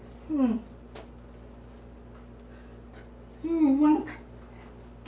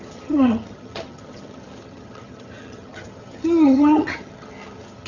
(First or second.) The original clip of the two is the first